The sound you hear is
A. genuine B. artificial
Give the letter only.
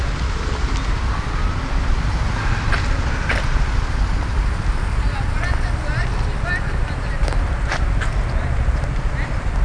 A